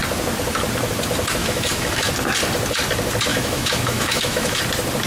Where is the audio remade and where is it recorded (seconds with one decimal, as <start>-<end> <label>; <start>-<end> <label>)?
0.0-1.4 recorded; 1.4-2.1 remade; 2.1-3.3 recorded; 3.3-4.6 remade; 4.6-5.1 recorded